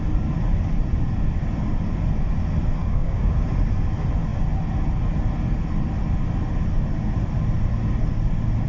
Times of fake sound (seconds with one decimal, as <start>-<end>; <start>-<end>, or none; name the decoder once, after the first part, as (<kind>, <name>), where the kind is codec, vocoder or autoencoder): 2.8-3.4 (codec, DAC)